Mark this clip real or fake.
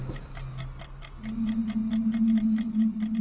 real